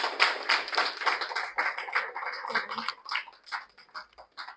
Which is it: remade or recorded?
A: recorded